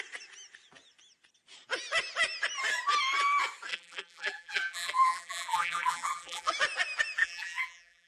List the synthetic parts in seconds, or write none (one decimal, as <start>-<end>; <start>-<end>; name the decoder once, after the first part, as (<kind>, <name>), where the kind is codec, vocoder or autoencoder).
3.7-6.5 (vocoder, BigVGAN v2); 7.2-8.1